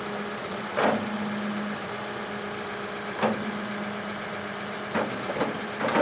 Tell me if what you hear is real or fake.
real